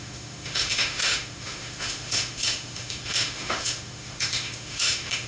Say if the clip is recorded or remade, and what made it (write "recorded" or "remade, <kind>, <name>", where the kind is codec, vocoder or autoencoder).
remade, autoencoder, DAC-VAE